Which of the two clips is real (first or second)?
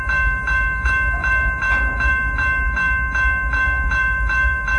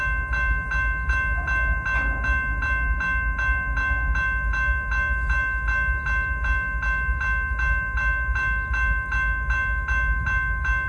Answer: second